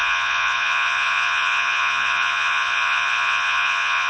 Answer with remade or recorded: remade